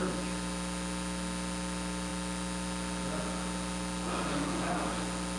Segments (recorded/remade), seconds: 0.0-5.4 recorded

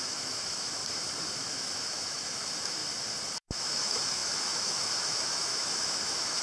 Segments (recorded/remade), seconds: 0.0-0.8 remade; 0.8-1.4 recorded; 1.4-2.8 remade; 2.8-3.4 recorded; 3.4-6.4 remade